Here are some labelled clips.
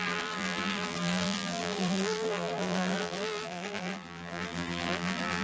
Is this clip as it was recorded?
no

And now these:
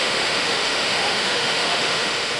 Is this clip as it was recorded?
no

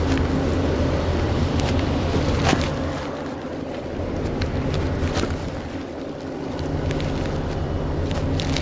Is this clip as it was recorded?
no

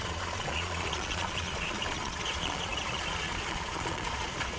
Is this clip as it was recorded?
no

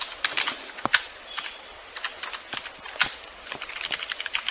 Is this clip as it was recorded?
yes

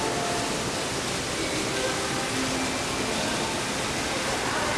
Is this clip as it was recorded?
yes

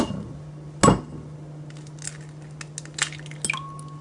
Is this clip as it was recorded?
yes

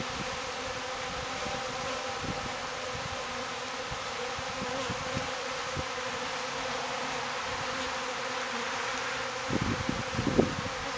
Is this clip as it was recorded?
yes